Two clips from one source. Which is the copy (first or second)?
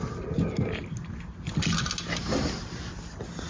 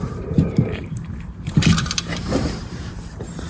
second